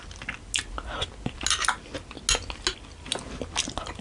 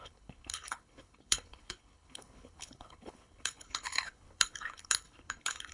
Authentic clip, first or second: first